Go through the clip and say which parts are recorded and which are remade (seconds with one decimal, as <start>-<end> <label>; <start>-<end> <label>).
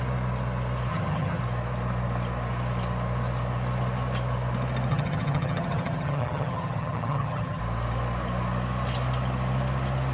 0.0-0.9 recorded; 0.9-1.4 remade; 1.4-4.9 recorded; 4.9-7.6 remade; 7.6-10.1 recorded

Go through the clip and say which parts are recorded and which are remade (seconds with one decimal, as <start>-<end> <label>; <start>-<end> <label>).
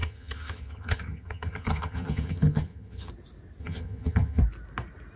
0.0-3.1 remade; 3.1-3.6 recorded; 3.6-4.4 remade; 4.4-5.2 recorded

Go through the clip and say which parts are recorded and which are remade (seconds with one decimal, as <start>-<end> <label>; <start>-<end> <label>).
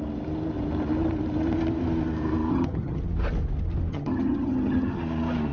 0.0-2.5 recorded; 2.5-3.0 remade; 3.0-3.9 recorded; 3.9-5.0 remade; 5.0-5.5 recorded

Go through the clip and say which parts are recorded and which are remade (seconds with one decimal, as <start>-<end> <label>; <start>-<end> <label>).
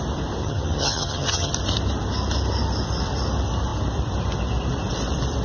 0.0-0.4 recorded; 0.4-1.5 remade; 1.5-5.4 recorded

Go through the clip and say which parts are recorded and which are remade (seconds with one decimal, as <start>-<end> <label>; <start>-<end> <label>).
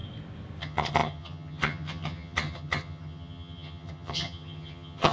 0.0-0.6 recorded; 0.6-5.1 remade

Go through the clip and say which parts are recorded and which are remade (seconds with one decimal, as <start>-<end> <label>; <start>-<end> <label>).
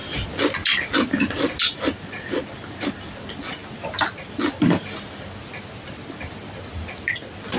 0.0-7.6 recorded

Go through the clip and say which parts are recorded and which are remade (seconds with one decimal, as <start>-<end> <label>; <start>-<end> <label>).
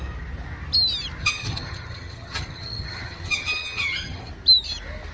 0.0-1.2 recorded; 1.2-4.3 remade; 4.3-5.1 recorded